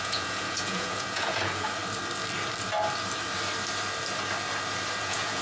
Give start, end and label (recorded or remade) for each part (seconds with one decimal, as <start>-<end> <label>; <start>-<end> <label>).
0.0-1.8 remade; 1.8-5.0 recorded; 5.0-5.4 remade